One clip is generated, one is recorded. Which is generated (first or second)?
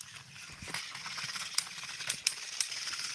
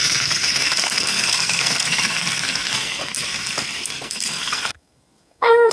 second